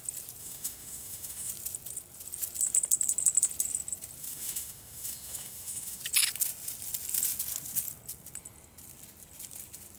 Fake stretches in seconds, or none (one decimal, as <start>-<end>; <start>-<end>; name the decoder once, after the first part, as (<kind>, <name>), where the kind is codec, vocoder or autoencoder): 0.4-1.5 (autoencoder, DAC-VAE); 4.2-6.0